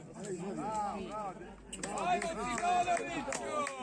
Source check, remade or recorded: recorded